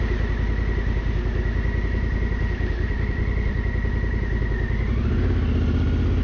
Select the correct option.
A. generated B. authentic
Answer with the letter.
B